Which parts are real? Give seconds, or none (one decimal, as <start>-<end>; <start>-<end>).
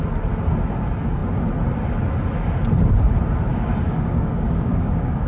0.0-3.5